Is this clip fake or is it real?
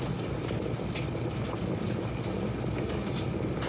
real